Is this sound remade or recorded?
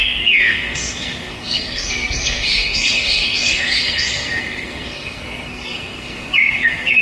remade